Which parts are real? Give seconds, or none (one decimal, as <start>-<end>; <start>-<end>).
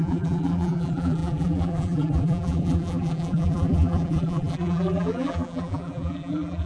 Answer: none